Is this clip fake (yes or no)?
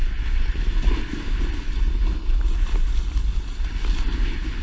no